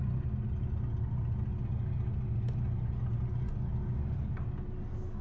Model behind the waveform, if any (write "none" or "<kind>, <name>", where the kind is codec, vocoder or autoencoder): none